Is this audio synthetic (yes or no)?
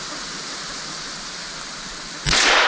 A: no